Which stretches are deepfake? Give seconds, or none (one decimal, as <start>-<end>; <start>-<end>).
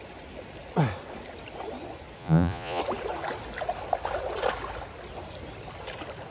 2.2-2.8